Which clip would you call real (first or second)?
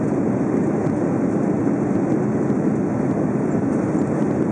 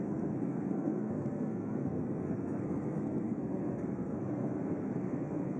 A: first